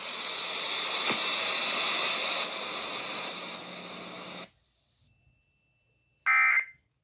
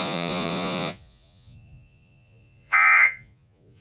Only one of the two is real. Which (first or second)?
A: first